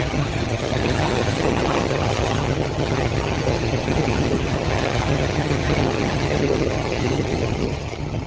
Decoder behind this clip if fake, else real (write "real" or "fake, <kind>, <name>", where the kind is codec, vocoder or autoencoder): fake, vocoder, HiFi-GAN